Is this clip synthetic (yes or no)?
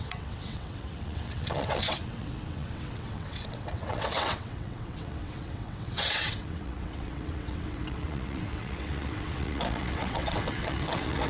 yes